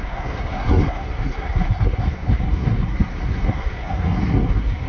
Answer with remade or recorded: remade